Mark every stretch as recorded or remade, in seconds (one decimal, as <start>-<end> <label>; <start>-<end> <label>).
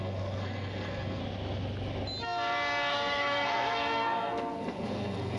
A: 0.0-1.2 remade; 1.2-2.9 recorded; 2.9-5.4 remade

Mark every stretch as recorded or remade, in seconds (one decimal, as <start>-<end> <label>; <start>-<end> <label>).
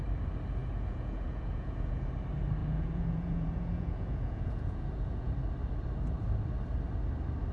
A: 0.0-0.6 recorded; 0.6-2.1 remade; 2.1-2.6 recorded; 2.6-5.3 remade; 5.3-7.5 recorded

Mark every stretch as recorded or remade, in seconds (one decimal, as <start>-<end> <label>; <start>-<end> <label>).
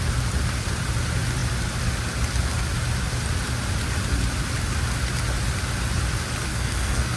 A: 0.0-6.5 recorded; 6.5-7.2 remade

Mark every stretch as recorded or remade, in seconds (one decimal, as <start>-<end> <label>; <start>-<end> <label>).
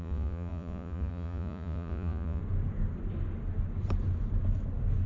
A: 0.0-2.4 remade; 2.4-5.1 recorded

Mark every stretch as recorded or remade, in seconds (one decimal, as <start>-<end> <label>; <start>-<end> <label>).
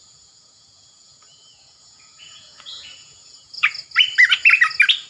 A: 0.0-3.7 remade; 3.7-5.1 recorded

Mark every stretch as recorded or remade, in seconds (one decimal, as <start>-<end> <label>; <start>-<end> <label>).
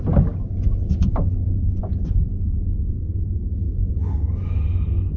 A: 0.0-5.2 recorded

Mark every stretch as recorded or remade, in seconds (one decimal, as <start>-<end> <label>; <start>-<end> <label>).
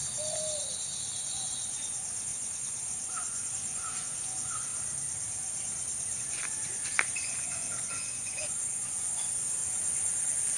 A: 0.0-1.2 recorded; 1.2-4.7 remade; 4.7-6.2 recorded; 6.2-9.6 remade; 9.6-10.6 recorded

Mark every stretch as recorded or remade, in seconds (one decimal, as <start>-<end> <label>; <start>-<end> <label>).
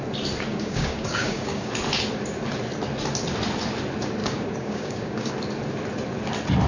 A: 0.0-0.5 recorded; 0.5-1.7 remade; 1.7-4.2 recorded; 4.2-5.3 remade; 5.3-6.7 recorded